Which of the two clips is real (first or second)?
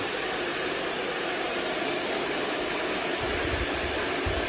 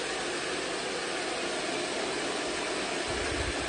second